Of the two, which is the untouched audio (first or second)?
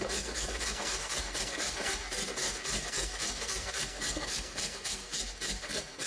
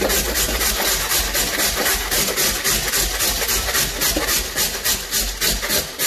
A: second